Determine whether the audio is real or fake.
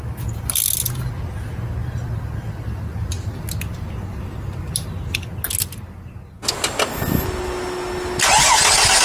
real